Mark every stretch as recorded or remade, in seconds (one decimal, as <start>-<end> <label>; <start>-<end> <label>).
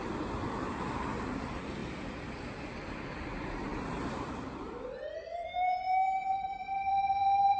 0.0-1.8 remade; 1.8-2.9 recorded; 2.9-7.6 remade